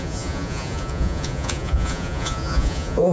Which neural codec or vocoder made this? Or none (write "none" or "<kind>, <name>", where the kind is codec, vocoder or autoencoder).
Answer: vocoder, Vocos